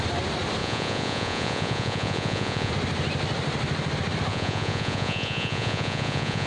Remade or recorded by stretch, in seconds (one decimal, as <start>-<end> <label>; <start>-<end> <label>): 0.0-0.6 recorded; 0.6-2.7 remade; 2.7-4.3 recorded; 4.3-6.5 remade